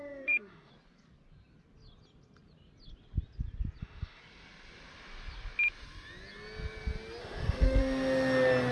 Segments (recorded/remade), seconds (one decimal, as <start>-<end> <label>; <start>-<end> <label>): 0.0-0.7 remade; 0.7-3.8 recorded; 3.8-4.2 remade; 4.2-7.2 recorded; 7.2-7.8 remade; 7.8-8.7 recorded